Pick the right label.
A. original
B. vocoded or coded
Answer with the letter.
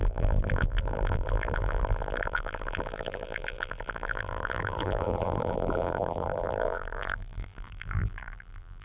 B